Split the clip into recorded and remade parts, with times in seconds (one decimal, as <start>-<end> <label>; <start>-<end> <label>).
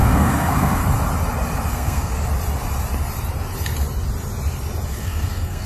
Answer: 0.0-0.8 remade; 0.8-1.7 recorded; 1.7-2.1 remade; 2.1-4.9 recorded; 4.9-5.7 remade